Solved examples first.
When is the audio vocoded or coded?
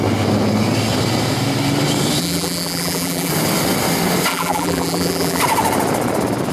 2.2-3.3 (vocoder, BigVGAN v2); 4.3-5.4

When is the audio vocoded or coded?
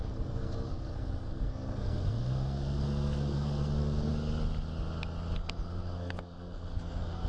0.0-4.1 (codec, SNAC); 5.4-7.3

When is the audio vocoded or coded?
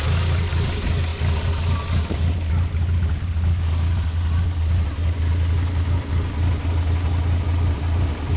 none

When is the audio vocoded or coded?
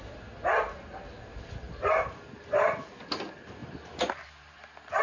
none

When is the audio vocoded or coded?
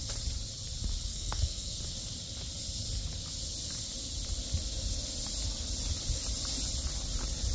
1.1-1.8 (codec, SNAC)